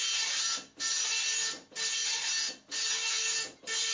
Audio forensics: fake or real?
real